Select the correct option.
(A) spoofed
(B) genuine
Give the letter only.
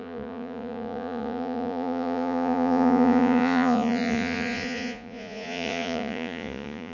A